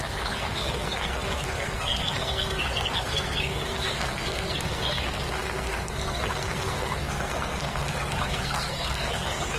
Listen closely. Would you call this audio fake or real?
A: fake